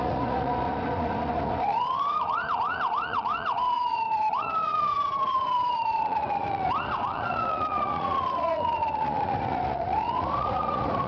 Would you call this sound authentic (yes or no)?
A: no